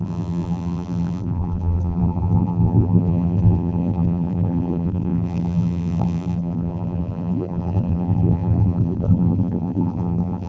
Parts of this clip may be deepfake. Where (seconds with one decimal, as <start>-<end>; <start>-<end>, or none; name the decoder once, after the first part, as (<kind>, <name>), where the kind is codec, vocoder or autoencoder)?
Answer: 0.0-10.5 (vocoder, BigVGAN v2)